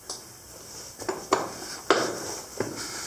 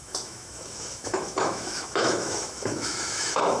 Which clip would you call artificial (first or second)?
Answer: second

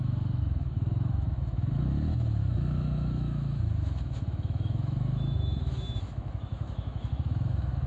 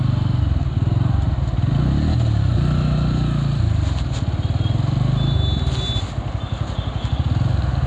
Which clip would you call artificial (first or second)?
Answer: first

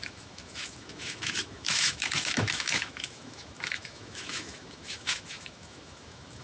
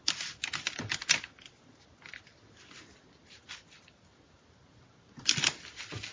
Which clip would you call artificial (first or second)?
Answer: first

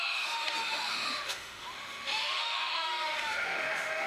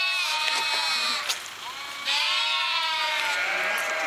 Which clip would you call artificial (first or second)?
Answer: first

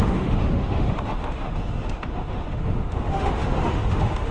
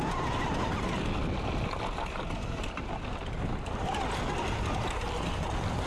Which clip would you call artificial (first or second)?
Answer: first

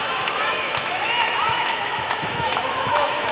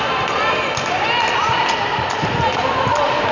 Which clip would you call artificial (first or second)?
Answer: first